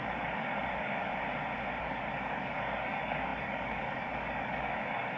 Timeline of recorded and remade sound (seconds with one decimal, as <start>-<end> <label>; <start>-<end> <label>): 0.0-1.1 remade; 1.1-1.8 recorded; 1.8-5.2 remade